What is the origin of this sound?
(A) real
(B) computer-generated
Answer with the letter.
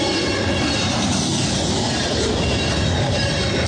A